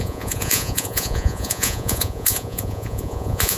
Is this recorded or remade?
remade